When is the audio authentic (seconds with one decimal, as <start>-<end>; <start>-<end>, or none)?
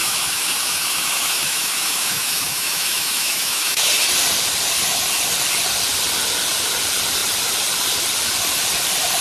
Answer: 3.9-9.2